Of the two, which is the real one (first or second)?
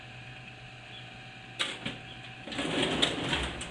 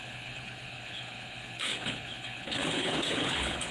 first